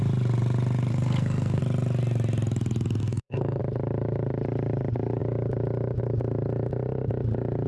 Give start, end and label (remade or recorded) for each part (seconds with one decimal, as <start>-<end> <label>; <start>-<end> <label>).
0.0-0.9 recorded; 0.9-1.6 remade; 1.6-3.0 recorded; 3.0-3.6 remade; 3.6-7.7 recorded